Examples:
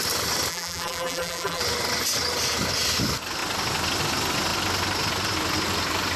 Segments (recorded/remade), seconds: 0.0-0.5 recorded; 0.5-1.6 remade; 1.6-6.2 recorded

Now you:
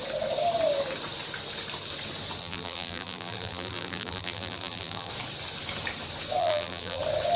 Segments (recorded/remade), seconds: 0.0-2.4 recorded; 2.4-5.1 remade; 5.1-6.4 recorded; 6.4-7.0 remade; 7.0-7.4 recorded

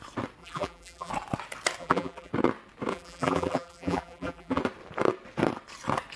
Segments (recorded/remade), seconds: 0.0-0.4 recorded; 0.4-1.1 remade; 1.1-1.8 recorded; 1.8-2.3 remade; 2.3-2.9 recorded; 2.9-4.6 remade; 4.6-6.2 recorded

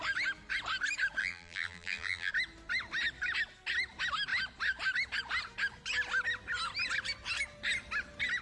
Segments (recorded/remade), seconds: 0.0-1.2 recorded; 1.2-2.3 remade; 2.3-8.4 recorded